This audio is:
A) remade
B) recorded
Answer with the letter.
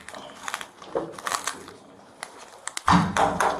B